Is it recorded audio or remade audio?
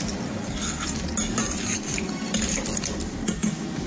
recorded